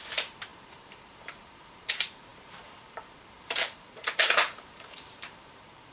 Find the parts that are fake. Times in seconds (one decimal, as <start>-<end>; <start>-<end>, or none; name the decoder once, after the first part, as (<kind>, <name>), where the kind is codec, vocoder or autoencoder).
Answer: 0.0-5.9 (vocoder, BigVGAN v2)